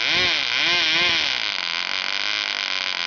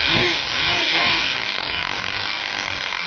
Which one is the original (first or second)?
first